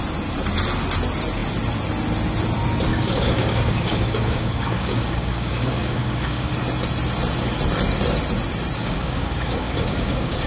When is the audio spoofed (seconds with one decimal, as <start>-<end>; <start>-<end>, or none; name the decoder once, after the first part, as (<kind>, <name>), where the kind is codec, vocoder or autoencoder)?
2.9-6.5 (codec, DAC); 8.8-10.5